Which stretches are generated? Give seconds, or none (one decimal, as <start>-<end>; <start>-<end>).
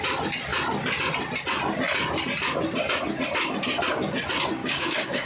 4.6-5.3